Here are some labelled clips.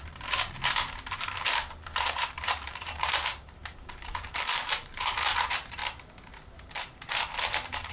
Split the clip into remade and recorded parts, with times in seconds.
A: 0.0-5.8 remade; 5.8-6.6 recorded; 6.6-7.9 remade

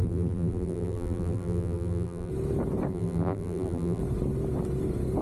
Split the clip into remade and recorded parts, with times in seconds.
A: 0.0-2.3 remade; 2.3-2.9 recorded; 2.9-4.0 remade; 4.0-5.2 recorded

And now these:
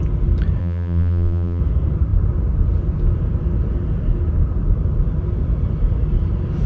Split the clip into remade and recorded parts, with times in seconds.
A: 0.0-0.6 recorded; 0.6-1.6 remade; 1.6-6.7 recorded